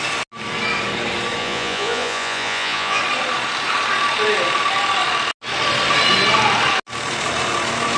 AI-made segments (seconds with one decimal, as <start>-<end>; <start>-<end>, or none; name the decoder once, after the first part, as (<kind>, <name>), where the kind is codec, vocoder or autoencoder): 1.4-3.0 (vocoder, Vocos)